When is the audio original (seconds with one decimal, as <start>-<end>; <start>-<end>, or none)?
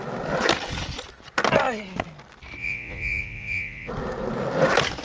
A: 0.0-2.6; 3.9-5.0